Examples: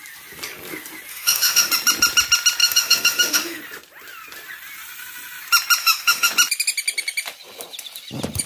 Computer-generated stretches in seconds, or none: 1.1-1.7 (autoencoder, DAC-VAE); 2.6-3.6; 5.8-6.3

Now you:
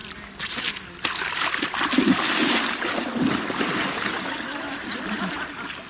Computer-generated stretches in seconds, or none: none

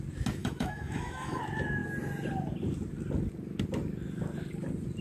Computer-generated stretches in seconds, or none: 0.4-1.4 (autoencoder, DAC-VAE)